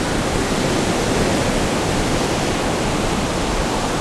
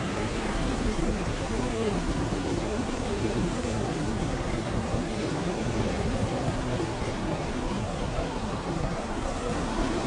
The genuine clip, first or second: first